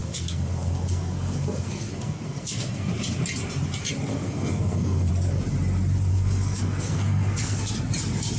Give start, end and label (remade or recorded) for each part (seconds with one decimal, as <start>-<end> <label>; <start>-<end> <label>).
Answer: 0.0-2.9 remade; 2.9-4.1 recorded; 4.1-5.1 remade; 5.1-6.1 recorded; 6.1-7.7 remade; 7.7-8.4 recorded